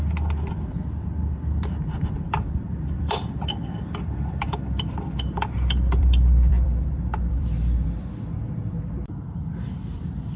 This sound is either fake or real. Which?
fake